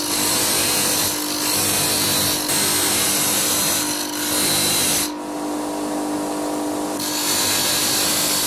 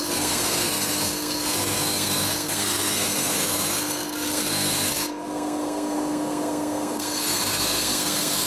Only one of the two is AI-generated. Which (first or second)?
second